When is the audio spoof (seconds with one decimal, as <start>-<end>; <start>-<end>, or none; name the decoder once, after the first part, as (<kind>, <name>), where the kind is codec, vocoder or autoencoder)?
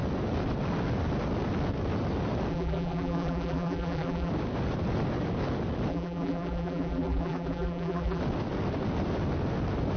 2.5-4.3 (vocoder, BigVGAN v2); 5.9-8.2